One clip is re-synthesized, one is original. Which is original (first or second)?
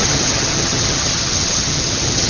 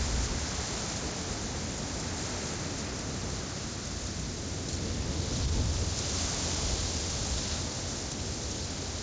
second